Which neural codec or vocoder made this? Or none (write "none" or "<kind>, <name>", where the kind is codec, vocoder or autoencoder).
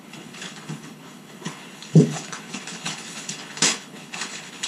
codec, HILCodec